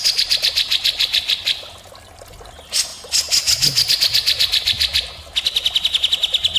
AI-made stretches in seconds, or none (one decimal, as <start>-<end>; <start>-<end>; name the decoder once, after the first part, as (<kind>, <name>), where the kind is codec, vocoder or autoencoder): none